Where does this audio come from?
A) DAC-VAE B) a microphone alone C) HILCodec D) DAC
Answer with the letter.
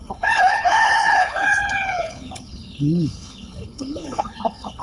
C